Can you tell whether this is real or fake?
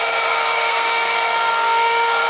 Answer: fake